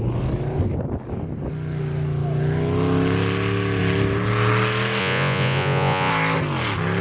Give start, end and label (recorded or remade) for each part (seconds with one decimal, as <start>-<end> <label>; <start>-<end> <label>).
0.0-5.0 recorded; 5.0-6.1 remade; 6.1-7.0 recorded